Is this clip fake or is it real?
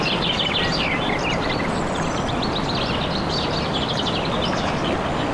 real